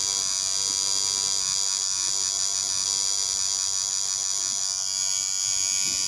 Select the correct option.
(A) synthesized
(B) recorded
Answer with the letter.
B